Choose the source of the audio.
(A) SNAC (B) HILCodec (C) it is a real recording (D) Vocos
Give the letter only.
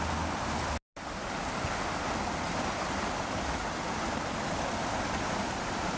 C